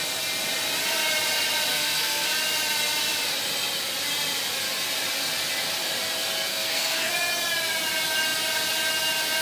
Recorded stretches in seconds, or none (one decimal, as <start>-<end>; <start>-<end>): 0.0-1.7; 2.3-6.5; 7.1-9.4